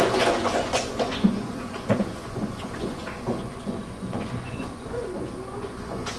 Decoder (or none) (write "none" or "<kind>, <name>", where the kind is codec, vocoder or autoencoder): vocoder, Vocos